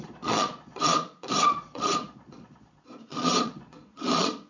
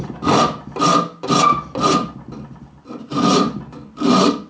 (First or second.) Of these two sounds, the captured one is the second